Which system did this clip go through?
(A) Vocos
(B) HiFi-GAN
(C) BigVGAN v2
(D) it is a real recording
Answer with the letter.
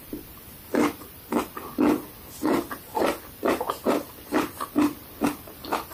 C